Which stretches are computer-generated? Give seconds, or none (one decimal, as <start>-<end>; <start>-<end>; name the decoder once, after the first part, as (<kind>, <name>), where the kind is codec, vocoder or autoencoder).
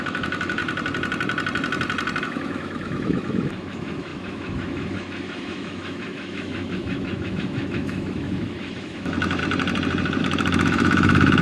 0.0-0.6 (autoencoder, DAC-VAE); 2.2-9.4; 10.2-11.4